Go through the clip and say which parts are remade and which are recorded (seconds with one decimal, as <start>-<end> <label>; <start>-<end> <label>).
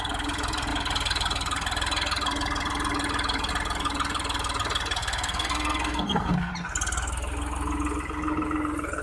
0.0-5.0 recorded; 5.0-6.5 remade; 6.5-9.0 recorded